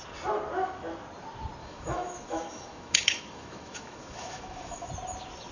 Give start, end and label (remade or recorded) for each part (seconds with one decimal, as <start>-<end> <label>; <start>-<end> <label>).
0.0-1.6 recorded; 1.6-4.9 remade; 4.9-5.5 recorded